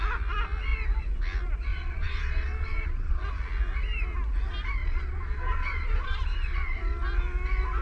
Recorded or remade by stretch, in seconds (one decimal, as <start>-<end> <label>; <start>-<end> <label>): 0.0-1.7 recorded; 1.7-3.2 remade; 3.2-4.8 recorded; 4.8-6.8 remade; 6.8-7.8 recorded